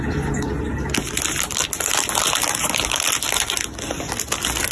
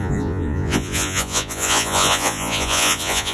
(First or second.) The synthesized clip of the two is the second